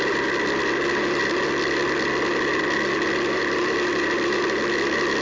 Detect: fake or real real